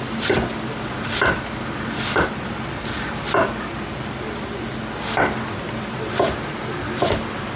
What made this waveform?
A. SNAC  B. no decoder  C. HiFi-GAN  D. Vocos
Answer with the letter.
B